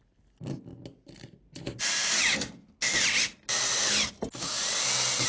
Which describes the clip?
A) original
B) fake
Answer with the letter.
A